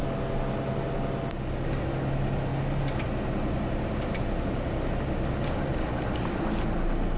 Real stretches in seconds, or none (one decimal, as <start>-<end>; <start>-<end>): 0.0-7.2